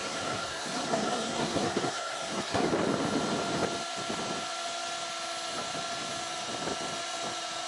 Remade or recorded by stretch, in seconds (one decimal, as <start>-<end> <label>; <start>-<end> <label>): 0.0-2.7 remade; 2.7-7.7 recorded